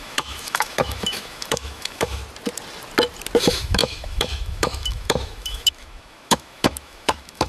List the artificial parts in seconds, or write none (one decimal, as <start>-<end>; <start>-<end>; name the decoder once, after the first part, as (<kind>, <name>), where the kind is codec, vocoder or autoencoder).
0.0-2.2 (autoencoder, DAC-VAE); 3.4-7.5